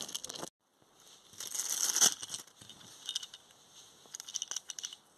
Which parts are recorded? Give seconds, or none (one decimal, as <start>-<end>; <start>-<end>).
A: 0.0-5.2